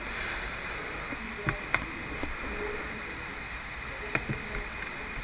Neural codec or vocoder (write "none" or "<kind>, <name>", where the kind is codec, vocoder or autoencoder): none